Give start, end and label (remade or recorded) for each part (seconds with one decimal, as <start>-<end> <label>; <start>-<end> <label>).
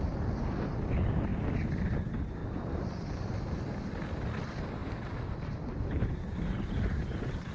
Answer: 0.0-2.4 recorded; 2.4-3.4 remade; 3.4-4.8 recorded; 4.8-7.5 remade